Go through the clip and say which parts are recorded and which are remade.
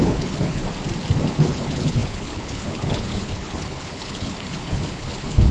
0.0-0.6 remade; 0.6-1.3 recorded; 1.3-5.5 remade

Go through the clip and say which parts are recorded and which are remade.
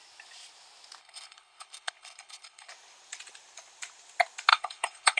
0.0-1.0 recorded; 1.0-2.7 remade; 2.7-4.5 recorded; 4.5-5.2 remade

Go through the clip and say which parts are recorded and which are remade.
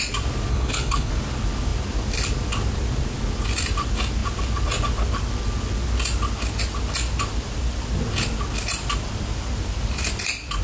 0.0-0.5 recorded; 0.5-1.1 remade; 1.1-10.6 recorded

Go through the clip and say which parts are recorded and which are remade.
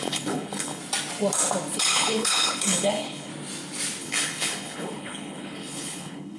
0.0-0.8 remade; 0.8-1.7 recorded; 1.7-3.3 remade; 3.3-4.0 recorded; 4.0-6.4 remade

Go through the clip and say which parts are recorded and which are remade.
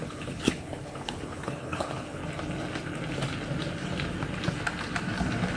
0.0-2.2 remade; 2.2-5.6 recorded